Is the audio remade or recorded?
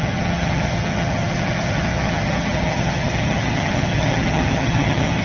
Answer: remade